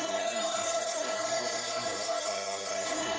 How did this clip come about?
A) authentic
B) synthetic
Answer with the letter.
B